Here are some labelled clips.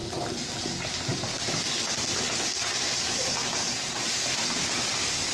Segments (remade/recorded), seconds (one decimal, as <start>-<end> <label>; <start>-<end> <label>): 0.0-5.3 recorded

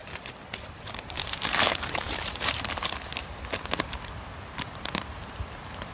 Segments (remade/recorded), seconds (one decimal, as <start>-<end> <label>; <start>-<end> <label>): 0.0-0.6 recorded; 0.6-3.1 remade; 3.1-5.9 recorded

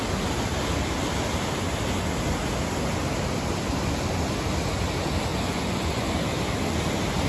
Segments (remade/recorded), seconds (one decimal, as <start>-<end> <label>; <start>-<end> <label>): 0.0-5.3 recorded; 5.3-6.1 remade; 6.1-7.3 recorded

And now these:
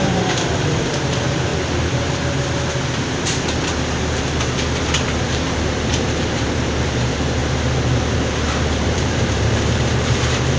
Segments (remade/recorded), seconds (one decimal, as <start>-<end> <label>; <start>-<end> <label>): 0.0-1.5 remade; 1.5-5.2 recorded; 5.2-7.4 remade; 7.4-8.1 recorded; 8.1-10.6 remade

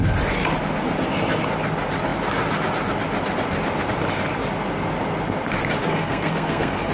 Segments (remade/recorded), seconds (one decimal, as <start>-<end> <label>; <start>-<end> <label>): 0.0-5.8 recorded; 5.8-6.9 remade